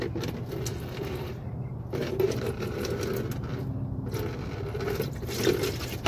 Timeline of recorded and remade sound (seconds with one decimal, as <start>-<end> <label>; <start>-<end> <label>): 0.0-0.7 recorded; 0.7-1.6 remade; 1.6-2.0 recorded; 2.0-3.1 remade; 3.1-6.1 recorded